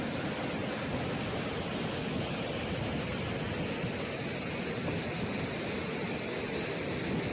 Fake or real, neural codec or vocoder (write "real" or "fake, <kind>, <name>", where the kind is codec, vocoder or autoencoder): real